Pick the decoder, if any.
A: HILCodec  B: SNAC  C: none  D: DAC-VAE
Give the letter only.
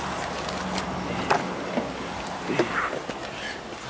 C